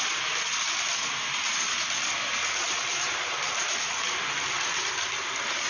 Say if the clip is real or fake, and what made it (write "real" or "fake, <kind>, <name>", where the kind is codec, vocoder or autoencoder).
real